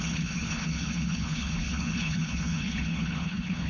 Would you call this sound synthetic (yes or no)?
yes